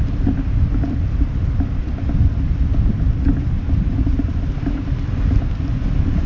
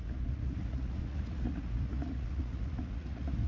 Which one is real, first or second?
first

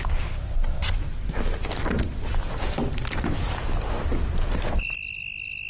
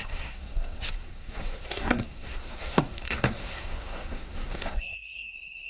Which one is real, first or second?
first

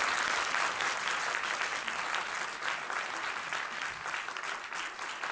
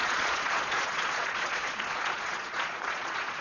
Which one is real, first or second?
first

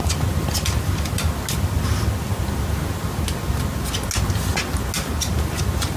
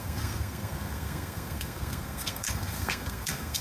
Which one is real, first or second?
first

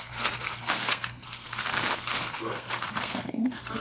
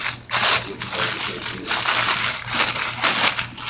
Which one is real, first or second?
second